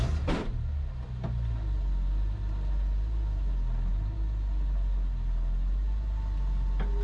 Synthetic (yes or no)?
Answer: no